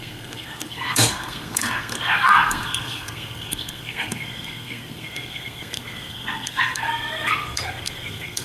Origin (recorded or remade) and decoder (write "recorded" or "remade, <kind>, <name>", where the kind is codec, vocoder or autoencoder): remade, codec, SNAC